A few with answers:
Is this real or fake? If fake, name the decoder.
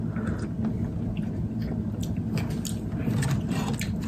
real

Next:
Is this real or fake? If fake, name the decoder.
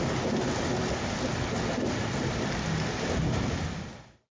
real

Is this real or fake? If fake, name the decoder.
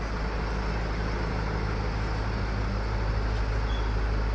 real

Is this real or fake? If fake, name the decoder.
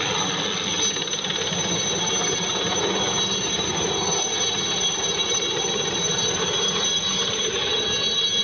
real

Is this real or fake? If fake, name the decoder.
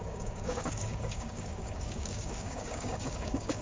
fake, codec, DAC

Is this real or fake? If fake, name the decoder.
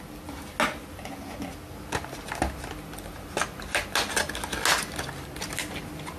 real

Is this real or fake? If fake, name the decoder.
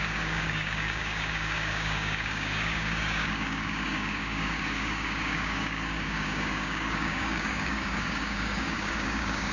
fake, codec, DAC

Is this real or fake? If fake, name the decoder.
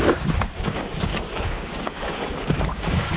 fake, codec, DAC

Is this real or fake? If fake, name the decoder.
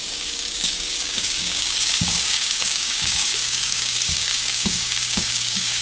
fake, codec, DAC